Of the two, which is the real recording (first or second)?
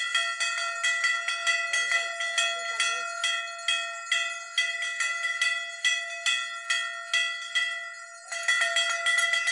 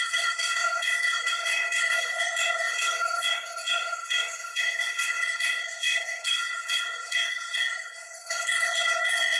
first